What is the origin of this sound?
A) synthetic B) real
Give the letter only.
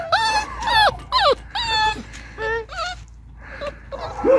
B